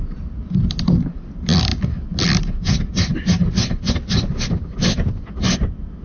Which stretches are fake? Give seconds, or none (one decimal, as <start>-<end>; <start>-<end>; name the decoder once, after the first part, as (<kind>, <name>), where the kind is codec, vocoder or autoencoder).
none